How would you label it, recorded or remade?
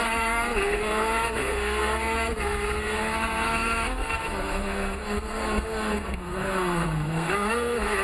remade